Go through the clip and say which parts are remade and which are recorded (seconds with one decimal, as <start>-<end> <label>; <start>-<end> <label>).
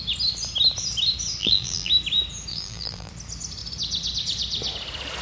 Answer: 0.0-1.4 recorded; 1.4-1.9 remade; 1.9-2.5 recorded; 2.5-3.1 remade; 3.1-5.2 recorded